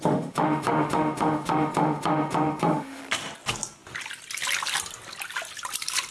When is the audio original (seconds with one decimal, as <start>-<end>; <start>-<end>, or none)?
3.0-6.1